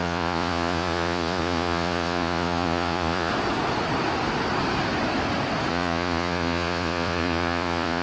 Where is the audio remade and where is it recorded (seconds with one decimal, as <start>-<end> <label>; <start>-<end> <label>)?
0.0-3.3 remade; 3.3-5.7 recorded; 5.7-8.0 remade